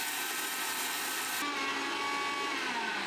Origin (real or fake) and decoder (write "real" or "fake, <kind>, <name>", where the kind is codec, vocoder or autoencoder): real